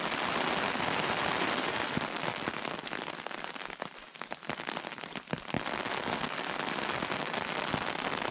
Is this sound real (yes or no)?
yes